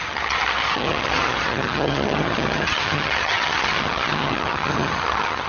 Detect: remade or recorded remade